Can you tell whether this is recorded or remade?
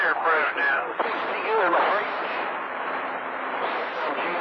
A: remade